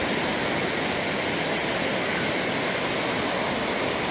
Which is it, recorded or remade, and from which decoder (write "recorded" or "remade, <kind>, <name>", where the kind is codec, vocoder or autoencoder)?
recorded